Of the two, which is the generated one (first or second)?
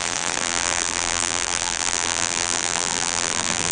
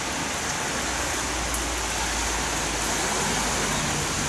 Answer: first